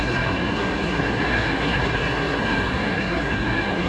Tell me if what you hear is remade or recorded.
remade